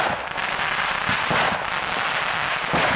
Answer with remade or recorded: recorded